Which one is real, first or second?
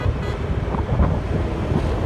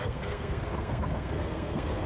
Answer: first